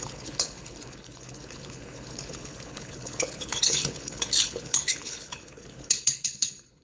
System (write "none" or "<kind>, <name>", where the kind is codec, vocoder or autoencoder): codec, HILCodec